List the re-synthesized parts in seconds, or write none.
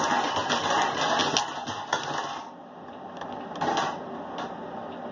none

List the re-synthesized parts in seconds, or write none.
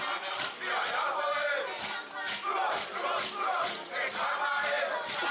none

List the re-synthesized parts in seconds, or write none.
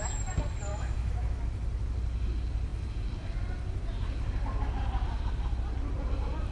0.7-1.4 (autoencoder, DAC-VAE)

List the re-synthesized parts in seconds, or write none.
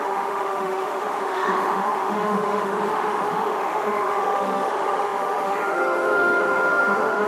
0.0-7.3 (autoencoder, DAC-VAE)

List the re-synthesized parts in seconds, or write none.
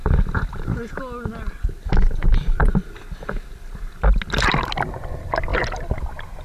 none